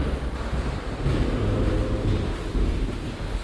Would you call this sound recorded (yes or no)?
yes